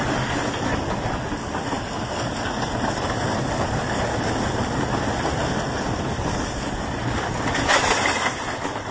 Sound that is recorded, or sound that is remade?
recorded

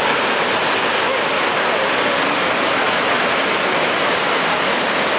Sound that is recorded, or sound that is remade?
recorded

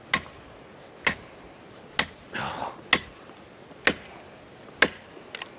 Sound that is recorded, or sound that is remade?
recorded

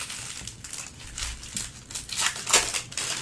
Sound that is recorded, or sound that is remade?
recorded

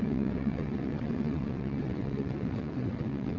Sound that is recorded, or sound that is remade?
remade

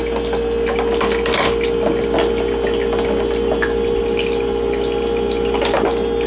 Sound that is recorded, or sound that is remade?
recorded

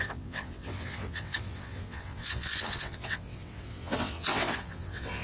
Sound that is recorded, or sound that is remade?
remade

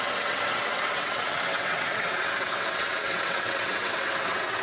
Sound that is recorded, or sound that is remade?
remade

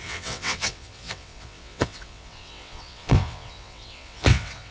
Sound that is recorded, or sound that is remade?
remade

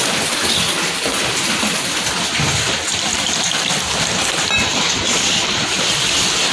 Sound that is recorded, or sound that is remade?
recorded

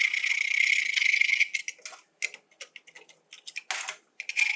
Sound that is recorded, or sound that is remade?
recorded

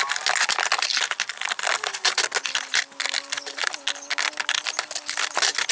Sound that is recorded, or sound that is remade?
recorded